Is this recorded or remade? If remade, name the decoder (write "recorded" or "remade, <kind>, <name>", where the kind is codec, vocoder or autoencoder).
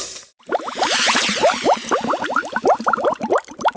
remade, vocoder, BigVGAN v2